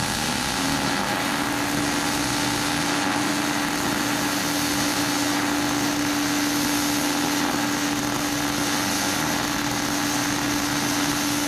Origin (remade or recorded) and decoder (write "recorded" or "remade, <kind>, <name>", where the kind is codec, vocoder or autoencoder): recorded